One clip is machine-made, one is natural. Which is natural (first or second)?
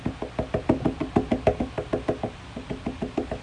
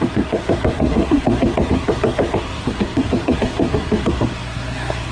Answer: first